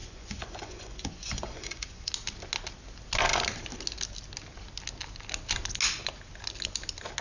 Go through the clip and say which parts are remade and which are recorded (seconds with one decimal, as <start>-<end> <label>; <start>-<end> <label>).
0.0-2.1 remade; 2.1-7.2 recorded